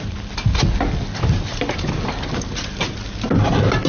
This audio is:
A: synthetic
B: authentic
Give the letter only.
B